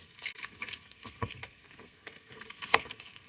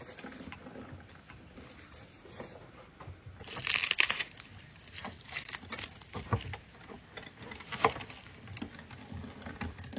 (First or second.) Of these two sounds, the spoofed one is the first